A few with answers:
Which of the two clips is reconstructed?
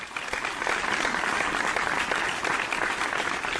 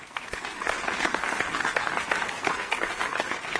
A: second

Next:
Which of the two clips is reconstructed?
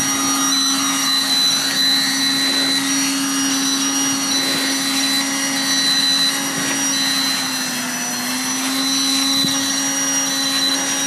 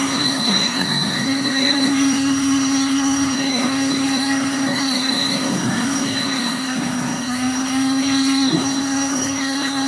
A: second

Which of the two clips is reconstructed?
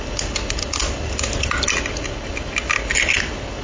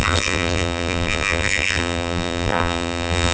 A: second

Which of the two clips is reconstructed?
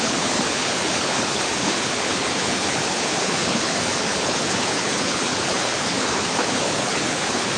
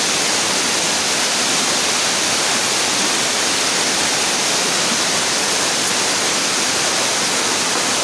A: first